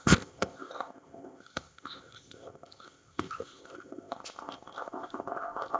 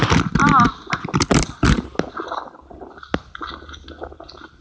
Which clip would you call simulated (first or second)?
first